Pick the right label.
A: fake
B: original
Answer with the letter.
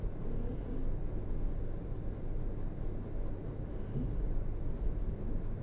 B